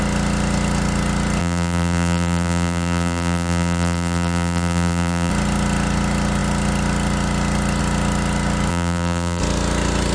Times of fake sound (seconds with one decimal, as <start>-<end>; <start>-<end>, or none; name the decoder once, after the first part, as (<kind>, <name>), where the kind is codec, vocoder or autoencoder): 1.4-5.3 (vocoder, BigVGAN v2); 8.7-9.4